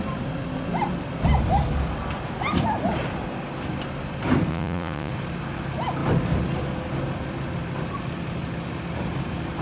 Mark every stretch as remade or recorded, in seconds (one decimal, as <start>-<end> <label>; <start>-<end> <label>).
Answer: 0.0-4.5 recorded; 4.5-5.1 remade; 5.1-9.6 recorded

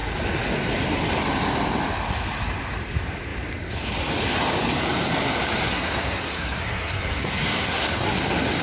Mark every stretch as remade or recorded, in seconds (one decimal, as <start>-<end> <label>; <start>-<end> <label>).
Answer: 0.0-5.7 recorded; 5.7-8.2 remade; 8.2-8.6 recorded